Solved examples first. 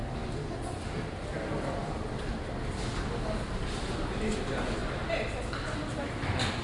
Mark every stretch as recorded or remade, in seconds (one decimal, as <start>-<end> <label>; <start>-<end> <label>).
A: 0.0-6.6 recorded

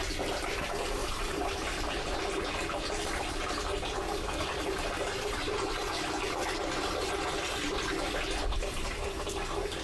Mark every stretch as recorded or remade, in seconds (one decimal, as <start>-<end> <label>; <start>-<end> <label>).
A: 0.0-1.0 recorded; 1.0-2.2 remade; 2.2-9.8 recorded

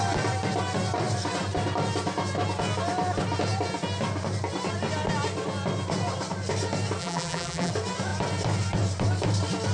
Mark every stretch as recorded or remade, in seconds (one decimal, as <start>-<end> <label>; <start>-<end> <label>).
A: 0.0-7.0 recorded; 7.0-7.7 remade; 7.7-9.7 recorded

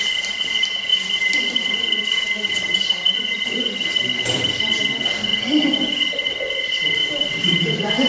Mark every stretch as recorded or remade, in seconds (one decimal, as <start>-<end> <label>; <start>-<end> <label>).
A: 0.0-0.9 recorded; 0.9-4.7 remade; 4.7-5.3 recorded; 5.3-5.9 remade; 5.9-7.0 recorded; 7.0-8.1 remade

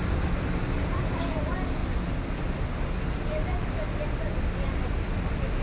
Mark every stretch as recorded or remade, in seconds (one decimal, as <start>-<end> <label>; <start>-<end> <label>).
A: 0.0-0.8 recorded; 0.8-1.4 remade; 1.4-5.6 recorded